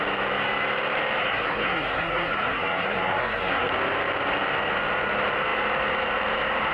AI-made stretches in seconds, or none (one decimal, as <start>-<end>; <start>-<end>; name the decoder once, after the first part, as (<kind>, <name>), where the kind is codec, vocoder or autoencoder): 1.2-3.7 (codec, SNAC)